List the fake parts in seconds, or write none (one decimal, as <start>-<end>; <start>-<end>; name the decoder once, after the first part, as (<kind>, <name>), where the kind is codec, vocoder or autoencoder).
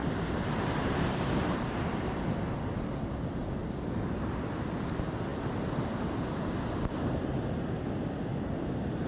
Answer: 0.0-1.8 (vocoder, BigVGAN v2)